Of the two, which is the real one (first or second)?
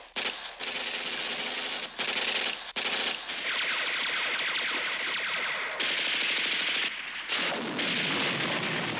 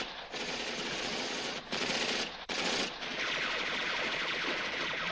first